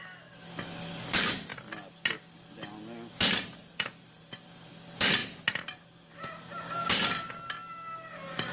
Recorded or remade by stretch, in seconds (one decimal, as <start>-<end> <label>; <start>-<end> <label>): 0.0-3.6 recorded; 3.6-4.7 remade; 4.7-8.5 recorded